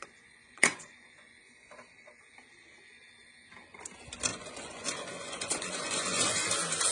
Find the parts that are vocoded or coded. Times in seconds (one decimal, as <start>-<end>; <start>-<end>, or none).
0.0-1.7; 4.3-6.5